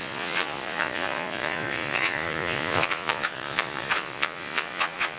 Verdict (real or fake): fake